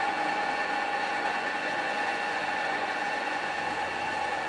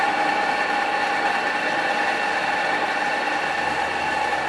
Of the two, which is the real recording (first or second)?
second